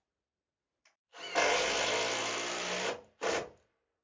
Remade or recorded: recorded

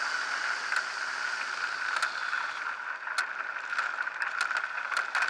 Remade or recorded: recorded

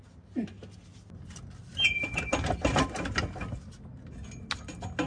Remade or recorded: recorded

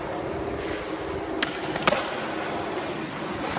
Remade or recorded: recorded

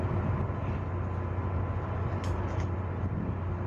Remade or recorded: recorded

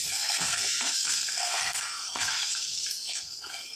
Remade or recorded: remade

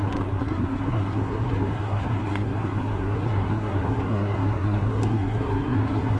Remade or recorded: remade